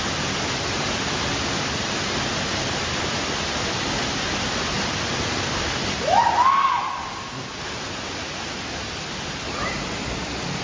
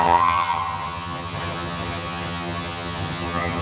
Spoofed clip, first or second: second